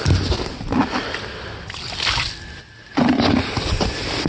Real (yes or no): yes